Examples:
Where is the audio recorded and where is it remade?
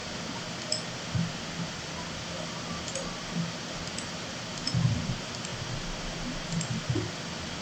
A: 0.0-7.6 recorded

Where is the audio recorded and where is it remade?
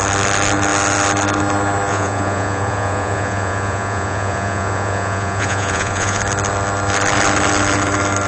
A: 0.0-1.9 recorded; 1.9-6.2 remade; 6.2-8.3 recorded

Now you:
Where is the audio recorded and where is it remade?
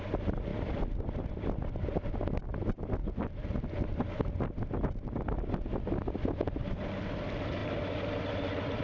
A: 0.0-8.8 recorded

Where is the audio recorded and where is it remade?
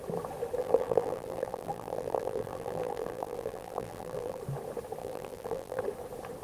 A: 0.0-0.6 recorded; 0.6-4.4 remade; 4.4-5.0 recorded; 5.0-5.8 remade; 5.8-6.4 recorded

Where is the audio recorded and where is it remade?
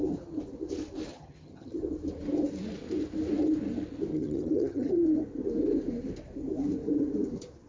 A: 0.0-1.1 recorded; 1.1-1.8 remade; 1.8-4.1 recorded; 4.1-4.9 remade; 4.9-7.7 recorded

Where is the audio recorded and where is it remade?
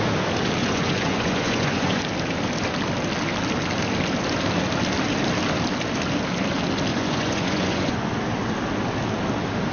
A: 0.0-0.6 recorded; 0.6-2.0 remade; 2.0-6.9 recorded; 6.9-8.1 remade; 8.1-9.7 recorded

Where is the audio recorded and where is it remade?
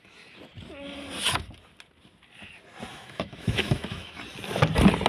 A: 0.0-2.9 recorded; 2.9-4.2 remade; 4.2-5.1 recorded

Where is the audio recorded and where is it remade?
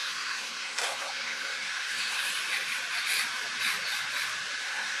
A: 0.0-2.3 remade; 2.3-4.6 recorded; 4.6-5.0 remade